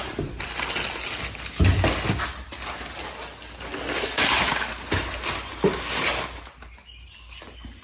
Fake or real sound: real